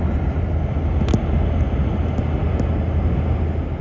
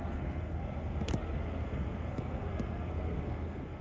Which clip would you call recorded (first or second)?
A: first